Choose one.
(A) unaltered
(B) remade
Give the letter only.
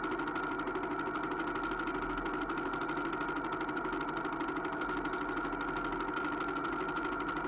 A